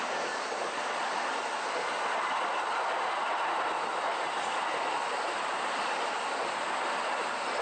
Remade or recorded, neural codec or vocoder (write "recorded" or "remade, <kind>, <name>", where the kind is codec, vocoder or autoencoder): recorded